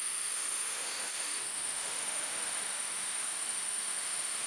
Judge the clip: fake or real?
fake